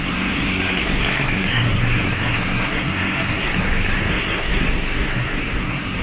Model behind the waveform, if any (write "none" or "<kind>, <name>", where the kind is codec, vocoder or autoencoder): codec, SNAC